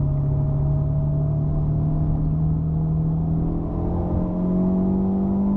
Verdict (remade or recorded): recorded